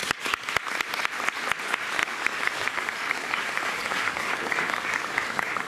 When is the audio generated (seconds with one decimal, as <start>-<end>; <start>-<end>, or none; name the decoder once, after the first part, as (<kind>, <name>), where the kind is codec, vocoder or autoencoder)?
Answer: 0.0-0.5 (codec, DAC); 2.0-5.7